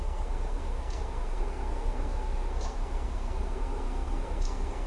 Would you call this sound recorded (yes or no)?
no